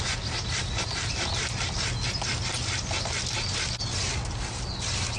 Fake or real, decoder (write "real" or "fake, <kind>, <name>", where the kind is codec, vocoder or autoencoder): real